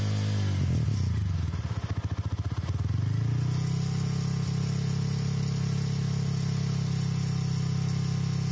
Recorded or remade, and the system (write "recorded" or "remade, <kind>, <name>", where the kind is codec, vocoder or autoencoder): recorded